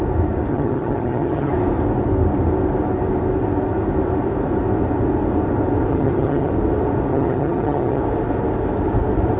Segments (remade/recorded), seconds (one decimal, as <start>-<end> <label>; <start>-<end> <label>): 0.0-0.5 recorded; 0.5-1.5 remade; 1.5-5.9 recorded; 5.9-6.5 remade; 6.5-7.1 recorded; 7.1-8.0 remade; 8.0-9.4 recorded